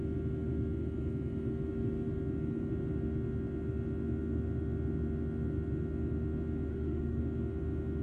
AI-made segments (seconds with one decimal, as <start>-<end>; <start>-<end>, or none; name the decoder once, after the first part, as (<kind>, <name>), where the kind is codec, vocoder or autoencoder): 6.7-7.2 (autoencoder, DAC-VAE)